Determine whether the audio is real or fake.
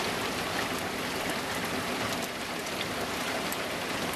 real